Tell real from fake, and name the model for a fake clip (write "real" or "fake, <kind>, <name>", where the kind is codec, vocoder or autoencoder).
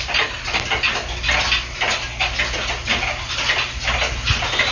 real